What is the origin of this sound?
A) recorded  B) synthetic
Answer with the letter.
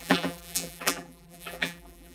B